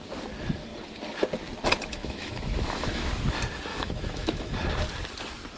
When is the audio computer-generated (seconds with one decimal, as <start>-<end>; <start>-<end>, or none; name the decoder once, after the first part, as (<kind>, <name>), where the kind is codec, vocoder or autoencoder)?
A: 2.0-3.1 (autoencoder, DAC-VAE); 3.7-4.5